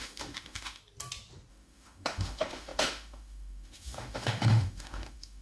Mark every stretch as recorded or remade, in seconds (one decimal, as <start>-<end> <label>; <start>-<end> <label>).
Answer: 0.0-0.8 remade; 0.8-1.5 recorded; 1.5-5.4 remade